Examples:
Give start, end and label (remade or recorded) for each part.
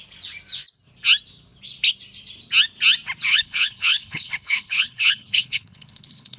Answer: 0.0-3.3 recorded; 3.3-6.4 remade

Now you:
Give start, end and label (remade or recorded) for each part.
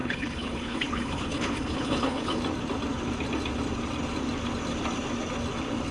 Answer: 0.0-2.4 remade; 2.4-5.9 recorded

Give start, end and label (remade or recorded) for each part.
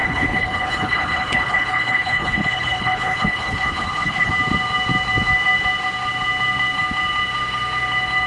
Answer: 0.0-4.3 remade; 4.3-8.3 recorded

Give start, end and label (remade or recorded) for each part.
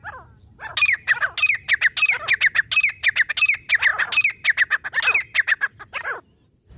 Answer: 0.0-6.8 recorded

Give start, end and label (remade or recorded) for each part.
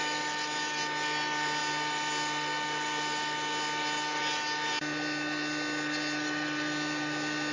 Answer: 0.0-7.5 recorded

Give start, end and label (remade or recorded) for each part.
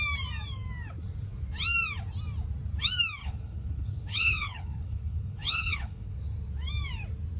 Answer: 0.0-3.2 recorded; 3.2-6.2 remade; 6.2-7.4 recorded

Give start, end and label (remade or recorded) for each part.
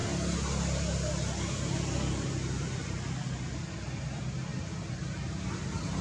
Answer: 0.0-6.0 recorded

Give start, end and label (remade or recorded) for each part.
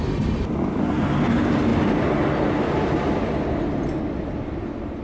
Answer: 0.0-5.0 recorded